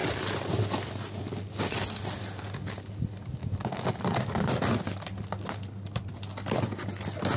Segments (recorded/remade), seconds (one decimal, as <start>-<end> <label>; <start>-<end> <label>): 0.0-7.4 recorded